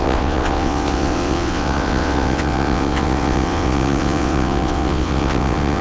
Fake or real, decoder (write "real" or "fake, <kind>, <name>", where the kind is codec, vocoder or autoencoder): fake, vocoder, WaveNeXt